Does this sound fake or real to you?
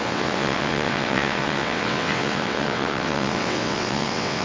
fake